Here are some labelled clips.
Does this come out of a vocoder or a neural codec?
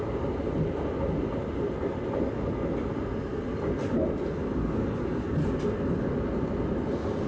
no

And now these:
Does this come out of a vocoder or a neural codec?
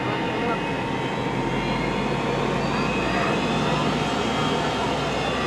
no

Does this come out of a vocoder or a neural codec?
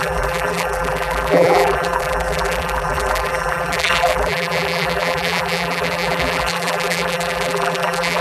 yes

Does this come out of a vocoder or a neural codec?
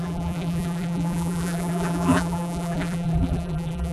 yes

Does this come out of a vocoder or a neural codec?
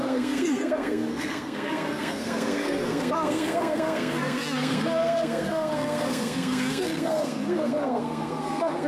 yes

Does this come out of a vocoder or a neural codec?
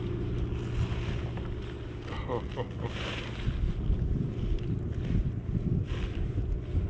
no